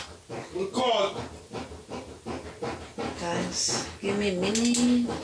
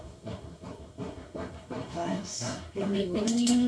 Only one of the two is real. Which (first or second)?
first